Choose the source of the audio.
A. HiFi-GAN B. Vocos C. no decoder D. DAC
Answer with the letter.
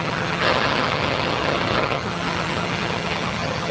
A